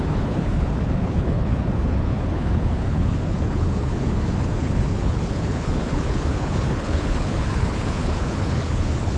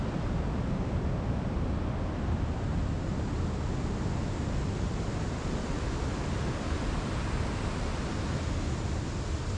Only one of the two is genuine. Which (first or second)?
second